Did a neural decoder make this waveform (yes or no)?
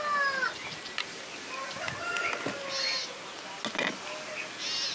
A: no